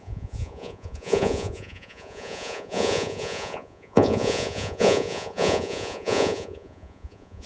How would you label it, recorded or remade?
remade